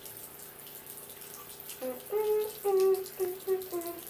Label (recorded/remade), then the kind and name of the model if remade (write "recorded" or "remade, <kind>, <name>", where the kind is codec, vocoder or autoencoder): recorded